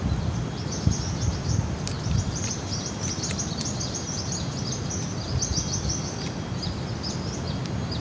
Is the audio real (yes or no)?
yes